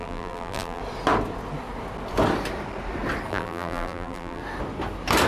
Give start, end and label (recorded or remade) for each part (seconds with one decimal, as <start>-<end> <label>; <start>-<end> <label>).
0.0-0.8 remade; 0.8-3.3 recorded; 3.3-4.4 remade; 4.4-5.3 recorded